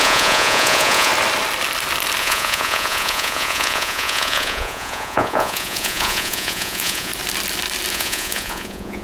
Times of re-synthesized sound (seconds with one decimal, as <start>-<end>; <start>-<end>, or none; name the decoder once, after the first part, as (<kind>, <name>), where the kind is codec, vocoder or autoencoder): 0.0-1.1 (vocoder, Vocos); 2.2-7.1; 7.9-9.0